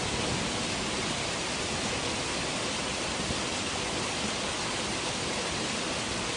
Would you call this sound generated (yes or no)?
no